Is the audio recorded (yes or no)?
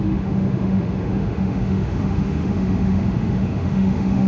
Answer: no